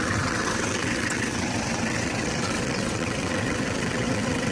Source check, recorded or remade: remade